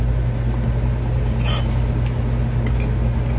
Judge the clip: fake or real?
real